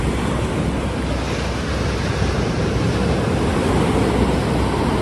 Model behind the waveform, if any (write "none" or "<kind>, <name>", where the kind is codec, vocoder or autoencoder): none